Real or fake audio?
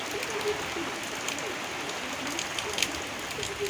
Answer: real